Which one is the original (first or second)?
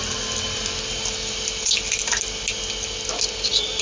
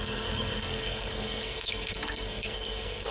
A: first